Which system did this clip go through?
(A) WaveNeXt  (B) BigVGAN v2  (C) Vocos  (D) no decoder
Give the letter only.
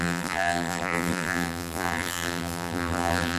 B